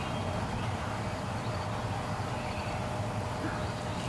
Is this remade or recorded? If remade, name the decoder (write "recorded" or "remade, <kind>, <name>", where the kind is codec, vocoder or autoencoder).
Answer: recorded